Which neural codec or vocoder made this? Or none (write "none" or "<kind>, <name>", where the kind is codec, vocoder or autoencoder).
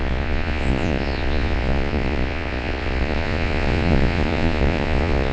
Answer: vocoder, Vocos